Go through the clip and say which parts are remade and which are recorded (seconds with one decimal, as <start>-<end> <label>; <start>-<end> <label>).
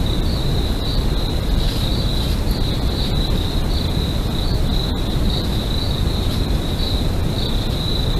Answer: 0.0-8.2 recorded